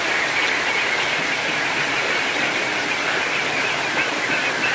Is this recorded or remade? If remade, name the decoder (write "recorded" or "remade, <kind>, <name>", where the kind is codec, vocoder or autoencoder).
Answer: recorded